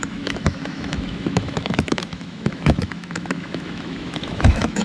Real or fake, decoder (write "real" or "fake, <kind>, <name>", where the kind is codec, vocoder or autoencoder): fake, autoencoder, DAC-VAE